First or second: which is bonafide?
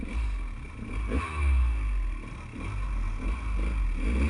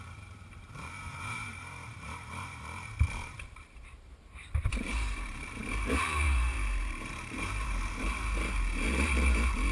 first